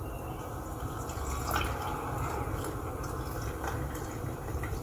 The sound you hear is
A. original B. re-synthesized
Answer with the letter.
A